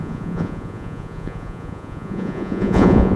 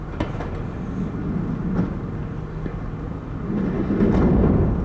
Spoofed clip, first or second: first